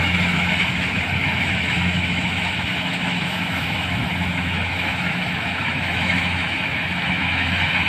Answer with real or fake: fake